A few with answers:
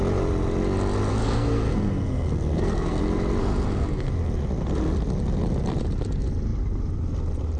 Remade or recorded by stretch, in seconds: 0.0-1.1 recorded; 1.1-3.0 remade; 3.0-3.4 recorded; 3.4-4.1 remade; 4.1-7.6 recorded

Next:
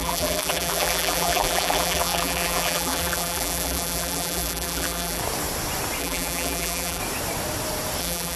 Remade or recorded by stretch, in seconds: 0.0-5.2 remade; 5.2-6.0 recorded; 6.0-7.0 remade; 7.0-8.0 recorded; 8.0-8.4 remade

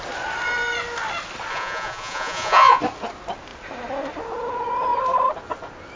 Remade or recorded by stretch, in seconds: 0.0-1.5 recorded; 1.5-2.8 remade; 2.8-6.0 recorded

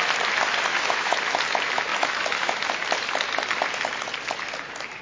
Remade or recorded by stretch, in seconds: 0.0-0.7 recorded; 0.7-1.4 remade; 1.4-1.9 recorded; 1.9-2.7 remade; 2.7-5.0 recorded

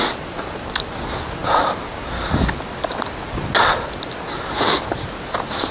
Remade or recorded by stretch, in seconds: 0.0-5.7 recorded

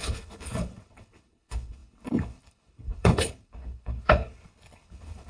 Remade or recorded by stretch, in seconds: 0.0-5.3 remade

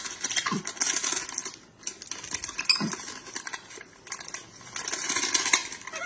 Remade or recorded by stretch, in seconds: 0.0-6.1 recorded